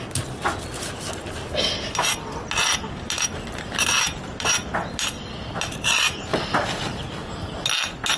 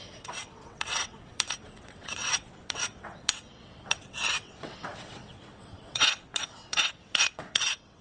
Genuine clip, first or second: first